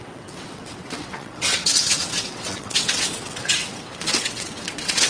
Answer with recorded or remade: remade